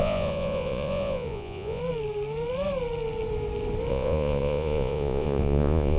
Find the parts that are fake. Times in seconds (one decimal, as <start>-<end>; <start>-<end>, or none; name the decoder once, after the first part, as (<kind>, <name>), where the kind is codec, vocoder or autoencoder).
0.0-1.8 (vocoder, Vocos); 3.9-6.0